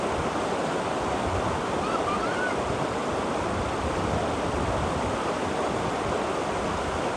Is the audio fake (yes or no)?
no